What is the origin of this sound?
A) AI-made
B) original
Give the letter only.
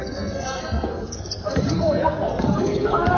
A